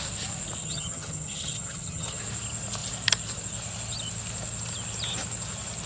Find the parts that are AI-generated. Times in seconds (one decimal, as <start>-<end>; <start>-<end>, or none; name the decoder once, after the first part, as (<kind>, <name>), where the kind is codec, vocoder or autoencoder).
0.6-2.2 (vocoder, HiFi-GAN)